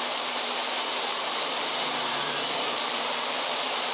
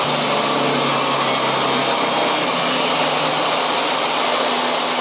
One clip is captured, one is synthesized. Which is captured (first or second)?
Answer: second